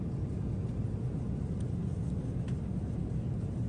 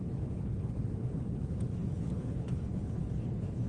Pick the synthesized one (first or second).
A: second